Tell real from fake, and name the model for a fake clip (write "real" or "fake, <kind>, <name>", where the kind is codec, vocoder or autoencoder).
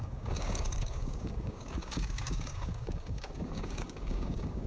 fake, codec, DAC